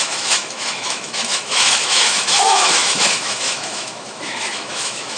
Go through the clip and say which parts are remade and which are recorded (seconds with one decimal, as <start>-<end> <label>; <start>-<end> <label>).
0.0-5.2 remade

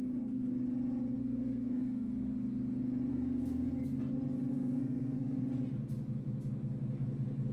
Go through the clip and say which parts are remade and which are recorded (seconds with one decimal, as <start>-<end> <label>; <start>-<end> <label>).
0.0-1.2 recorded; 1.2-2.1 remade; 2.1-3.1 recorded; 3.1-3.7 remade; 3.7-4.5 recorded; 4.5-5.4 remade; 5.4-7.5 recorded